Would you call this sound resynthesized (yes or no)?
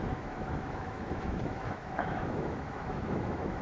yes